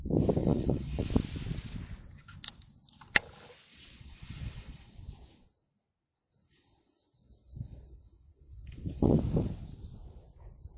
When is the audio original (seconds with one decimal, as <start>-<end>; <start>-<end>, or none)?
0.0-0.4; 1.1-3.7; 4.9-6.4; 9.2-10.8